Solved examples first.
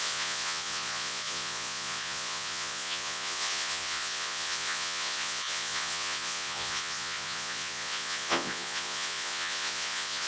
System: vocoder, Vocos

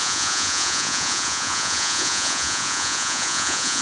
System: vocoder, Vocos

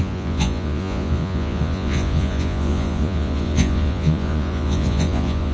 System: vocoder, Vocos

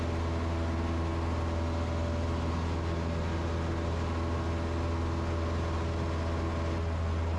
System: none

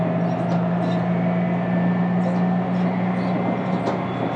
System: none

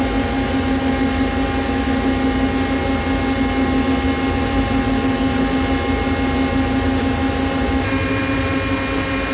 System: none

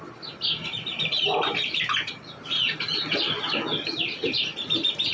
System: none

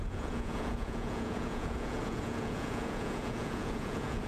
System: vocoder, Vocos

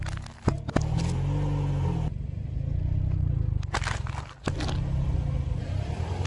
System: none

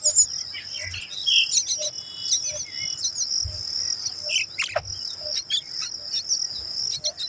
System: none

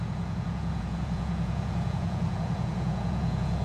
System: vocoder, Vocos